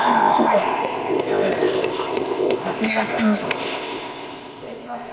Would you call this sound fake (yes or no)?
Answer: yes